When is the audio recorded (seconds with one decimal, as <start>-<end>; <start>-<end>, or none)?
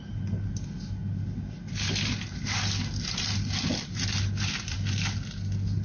0.0-5.8